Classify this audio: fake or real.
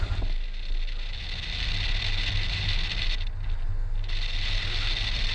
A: real